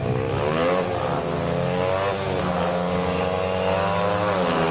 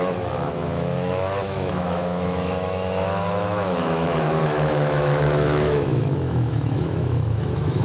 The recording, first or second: first